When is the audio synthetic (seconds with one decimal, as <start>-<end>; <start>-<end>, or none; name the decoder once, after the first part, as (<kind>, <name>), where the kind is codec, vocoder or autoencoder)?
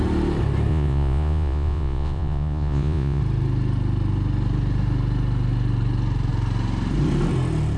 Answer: 0.7-3.2 (vocoder, Vocos)